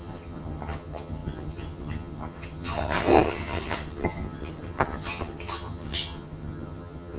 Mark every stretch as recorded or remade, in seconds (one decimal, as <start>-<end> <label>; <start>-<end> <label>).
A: 0.0-7.2 remade